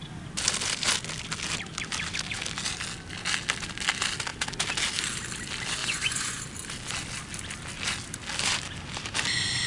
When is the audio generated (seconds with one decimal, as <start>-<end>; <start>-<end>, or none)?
5.8-6.4